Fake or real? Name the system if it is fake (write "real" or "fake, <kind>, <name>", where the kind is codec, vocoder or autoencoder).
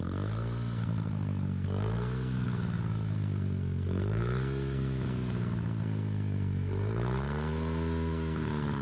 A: fake, codec, SNAC